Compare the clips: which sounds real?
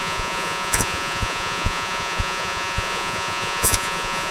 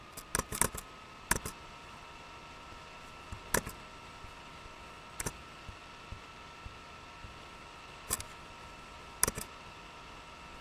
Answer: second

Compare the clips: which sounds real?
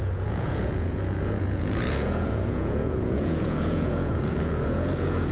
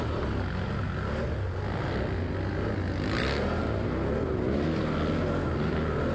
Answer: second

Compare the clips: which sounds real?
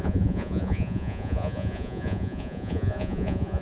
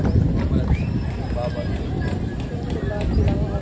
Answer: second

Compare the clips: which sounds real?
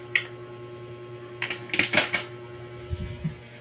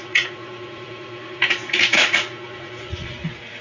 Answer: first